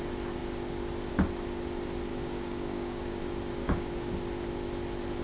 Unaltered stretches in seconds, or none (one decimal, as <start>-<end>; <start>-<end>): 0.0-2.1; 3.2-3.6; 4.1-5.2